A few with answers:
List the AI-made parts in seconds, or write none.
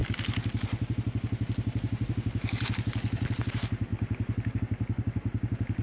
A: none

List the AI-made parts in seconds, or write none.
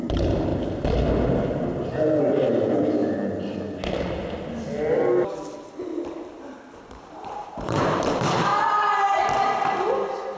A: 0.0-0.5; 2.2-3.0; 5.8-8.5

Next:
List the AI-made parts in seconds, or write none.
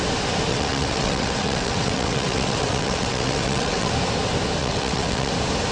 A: 0.5-3.9; 4.6-5.3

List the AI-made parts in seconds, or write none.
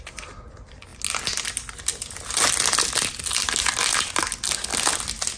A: none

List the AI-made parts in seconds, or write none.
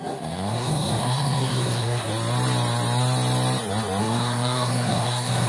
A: 0.0-2.1; 4.0-5.5